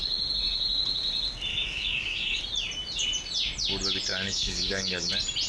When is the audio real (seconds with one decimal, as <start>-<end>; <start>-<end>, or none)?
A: 0.0-1.5; 2.4-4.1; 5.1-5.5